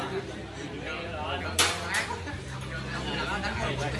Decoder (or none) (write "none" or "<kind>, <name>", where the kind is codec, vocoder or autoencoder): none